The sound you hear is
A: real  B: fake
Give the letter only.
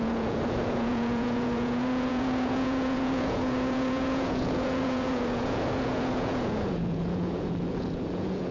B